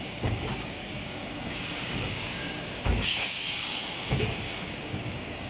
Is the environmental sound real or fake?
fake